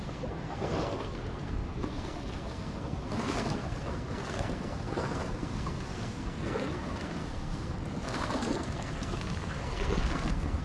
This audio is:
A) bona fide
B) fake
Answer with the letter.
B